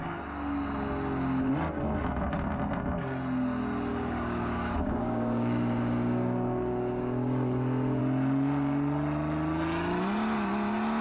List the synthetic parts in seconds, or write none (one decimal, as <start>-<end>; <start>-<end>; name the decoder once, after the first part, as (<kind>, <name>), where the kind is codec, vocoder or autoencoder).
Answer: 3.9-8.0 (codec, DAC)